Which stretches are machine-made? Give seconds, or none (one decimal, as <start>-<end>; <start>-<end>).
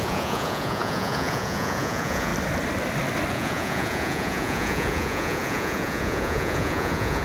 0.0-2.3; 3.3-7.2